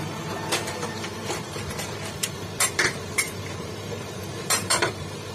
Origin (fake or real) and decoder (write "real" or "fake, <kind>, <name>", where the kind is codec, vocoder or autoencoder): fake, vocoder, BigVGAN v2